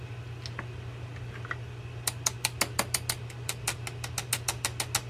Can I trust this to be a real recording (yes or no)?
yes